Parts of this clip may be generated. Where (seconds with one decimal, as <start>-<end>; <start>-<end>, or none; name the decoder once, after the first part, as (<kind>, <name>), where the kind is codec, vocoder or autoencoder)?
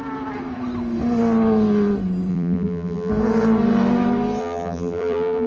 2.3-3.1 (vocoder, BigVGAN v2); 4.4-5.5